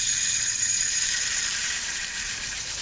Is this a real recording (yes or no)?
no